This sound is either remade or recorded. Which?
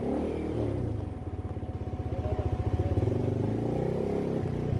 recorded